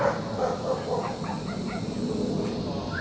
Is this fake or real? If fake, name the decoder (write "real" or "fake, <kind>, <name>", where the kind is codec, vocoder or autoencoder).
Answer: real